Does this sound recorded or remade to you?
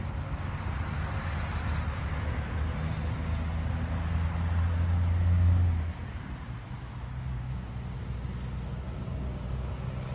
recorded